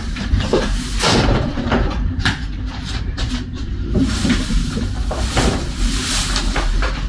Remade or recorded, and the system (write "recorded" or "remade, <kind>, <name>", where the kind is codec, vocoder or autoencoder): remade, vocoder, BigVGAN v2